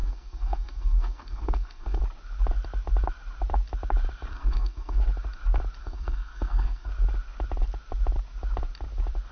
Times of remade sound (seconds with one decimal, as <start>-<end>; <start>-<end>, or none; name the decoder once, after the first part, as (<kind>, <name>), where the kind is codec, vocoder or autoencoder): 0.0-2.0 (codec, SNAC); 4.3-5.0; 5.8-6.9